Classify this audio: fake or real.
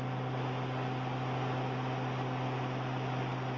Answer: real